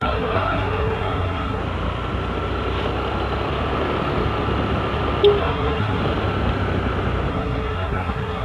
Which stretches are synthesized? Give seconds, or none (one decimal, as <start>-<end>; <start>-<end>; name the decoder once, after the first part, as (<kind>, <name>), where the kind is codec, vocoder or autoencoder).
0.0-1.6 (codec, SNAC); 5.4-6.0; 7.3-8.4